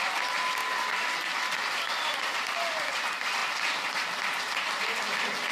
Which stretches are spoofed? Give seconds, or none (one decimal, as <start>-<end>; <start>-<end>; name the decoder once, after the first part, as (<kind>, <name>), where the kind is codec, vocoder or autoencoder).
none

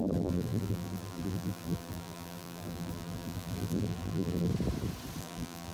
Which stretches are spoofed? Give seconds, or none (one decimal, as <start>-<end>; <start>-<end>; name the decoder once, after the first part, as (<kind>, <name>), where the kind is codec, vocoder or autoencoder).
0.0-4.5 (vocoder, BigVGAN v2); 5.2-5.7

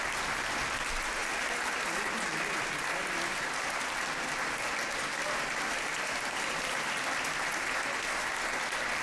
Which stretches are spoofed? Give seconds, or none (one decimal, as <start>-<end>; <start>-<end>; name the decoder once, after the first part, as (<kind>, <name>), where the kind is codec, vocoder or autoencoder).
none

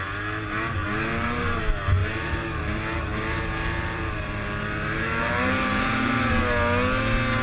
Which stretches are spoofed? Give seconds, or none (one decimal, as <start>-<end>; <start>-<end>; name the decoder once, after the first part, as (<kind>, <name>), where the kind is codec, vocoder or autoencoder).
0.8-1.6 (vocoder, BigVGAN v2); 2.0-6.4

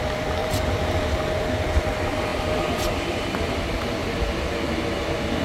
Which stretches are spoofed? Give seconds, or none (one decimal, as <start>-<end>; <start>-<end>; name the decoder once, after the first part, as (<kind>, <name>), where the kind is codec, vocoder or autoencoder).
0.4-1.2 (vocoder, BigVGAN v2)